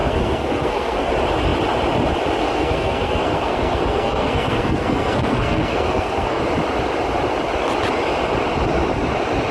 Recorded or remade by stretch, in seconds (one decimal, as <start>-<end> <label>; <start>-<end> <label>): 0.0-1.1 remade; 1.1-2.4 recorded; 2.4-6.4 remade; 6.4-9.5 recorded